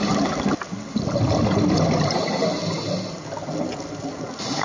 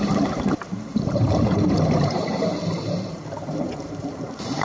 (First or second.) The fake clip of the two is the second